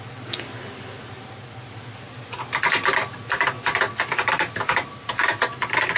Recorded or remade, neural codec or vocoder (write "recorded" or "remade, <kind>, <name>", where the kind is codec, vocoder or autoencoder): recorded